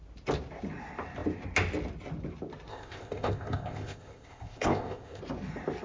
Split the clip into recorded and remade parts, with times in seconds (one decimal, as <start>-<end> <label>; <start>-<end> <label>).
0.0-2.7 recorded; 2.7-5.2 remade; 5.2-5.8 recorded

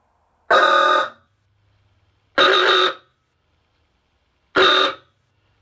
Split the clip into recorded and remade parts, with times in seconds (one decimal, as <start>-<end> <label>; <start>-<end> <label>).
0.0-5.6 recorded

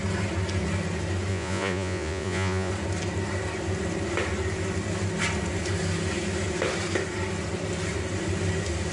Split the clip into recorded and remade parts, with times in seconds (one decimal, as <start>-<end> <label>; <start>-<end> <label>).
0.0-1.3 recorded; 1.3-2.7 remade; 2.7-8.9 recorded